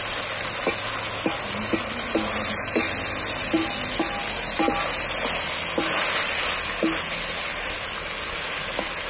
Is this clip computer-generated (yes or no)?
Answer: no